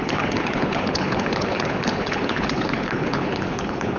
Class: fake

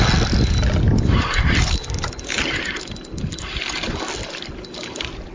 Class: real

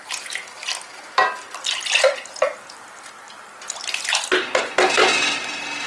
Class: real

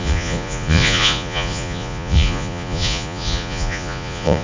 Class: fake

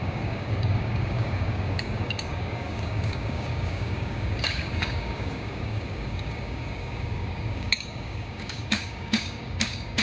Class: fake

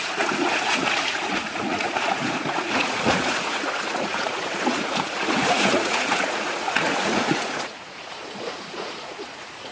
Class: fake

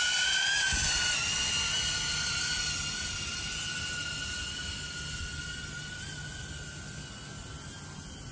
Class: real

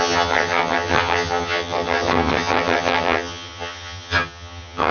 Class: fake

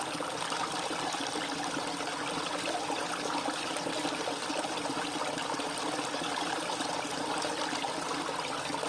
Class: real